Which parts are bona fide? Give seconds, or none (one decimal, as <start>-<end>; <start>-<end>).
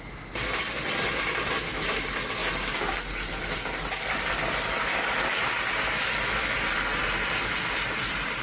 0.0-8.4